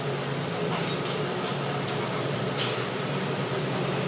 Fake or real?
real